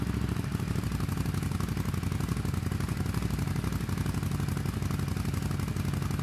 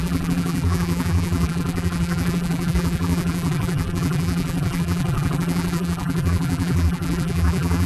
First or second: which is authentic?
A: first